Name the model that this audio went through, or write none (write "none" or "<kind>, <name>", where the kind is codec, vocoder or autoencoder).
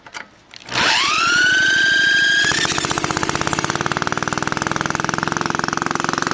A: none